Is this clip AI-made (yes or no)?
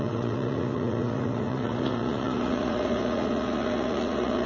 yes